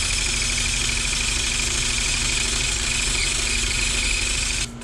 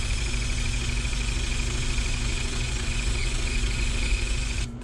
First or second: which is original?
first